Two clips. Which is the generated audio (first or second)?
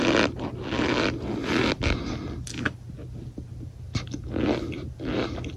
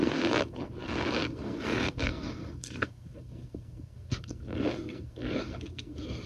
second